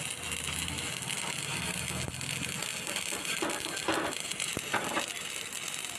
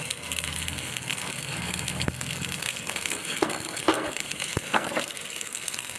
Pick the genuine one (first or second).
first